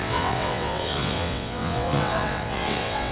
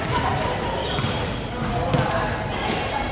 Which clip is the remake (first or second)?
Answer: first